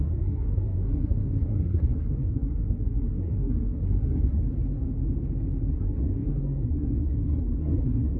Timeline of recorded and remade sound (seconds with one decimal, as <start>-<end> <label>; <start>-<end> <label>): 0.0-4.4 remade; 4.4-5.7 recorded; 5.7-8.2 remade